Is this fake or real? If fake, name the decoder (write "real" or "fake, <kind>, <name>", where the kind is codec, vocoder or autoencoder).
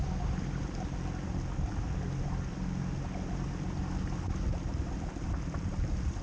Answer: real